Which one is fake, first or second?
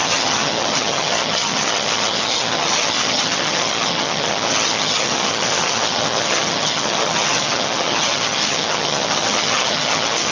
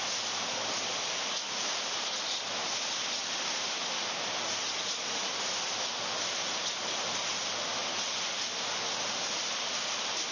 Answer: first